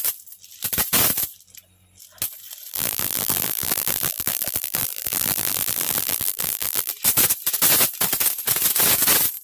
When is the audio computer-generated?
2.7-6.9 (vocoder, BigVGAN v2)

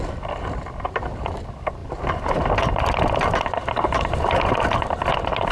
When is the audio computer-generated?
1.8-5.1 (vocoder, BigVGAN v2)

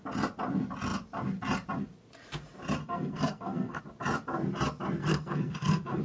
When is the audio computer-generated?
2.8-3.8 (codec, SNAC); 5.0-6.0

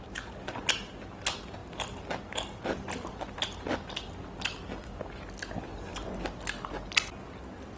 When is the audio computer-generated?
none

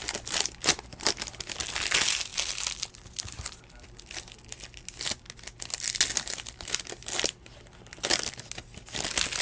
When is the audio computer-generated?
none

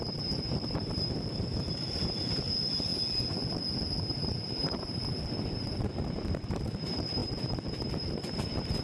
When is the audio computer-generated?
0.0-2.9 (vocoder, BigVGAN v2); 5.3-7.2; 7.7-8.8

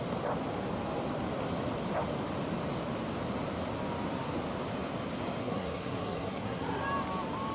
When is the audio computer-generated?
5.4-6.8 (codec, SNAC)